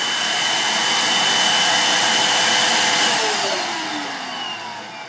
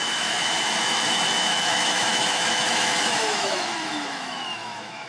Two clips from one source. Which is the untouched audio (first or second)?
first